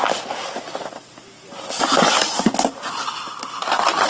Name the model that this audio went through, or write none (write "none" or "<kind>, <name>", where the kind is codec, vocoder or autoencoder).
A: none